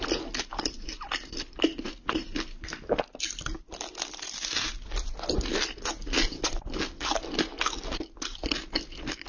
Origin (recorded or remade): recorded